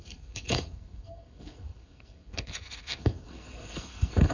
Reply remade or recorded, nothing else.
remade